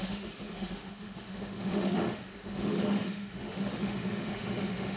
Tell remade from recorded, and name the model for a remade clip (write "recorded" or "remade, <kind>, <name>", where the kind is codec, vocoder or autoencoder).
remade, autoencoder, DAC-VAE